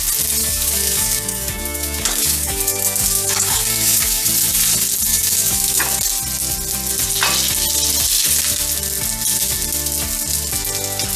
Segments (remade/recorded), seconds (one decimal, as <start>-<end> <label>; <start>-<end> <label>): 0.0-0.4 recorded; 0.4-4.3 remade; 4.3-5.1 recorded; 5.1-5.8 remade; 5.8-11.2 recorded